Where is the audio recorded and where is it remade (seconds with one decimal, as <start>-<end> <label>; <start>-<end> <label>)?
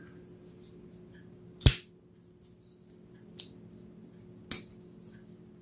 0.0-5.6 recorded